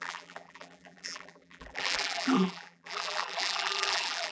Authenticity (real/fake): fake